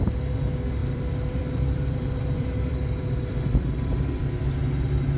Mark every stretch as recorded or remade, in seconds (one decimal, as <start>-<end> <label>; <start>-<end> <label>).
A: 0.0-0.8 recorded; 0.8-3.9 remade; 3.9-5.2 recorded